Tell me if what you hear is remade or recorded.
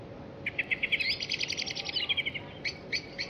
recorded